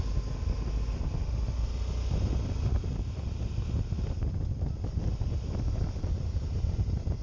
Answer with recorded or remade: recorded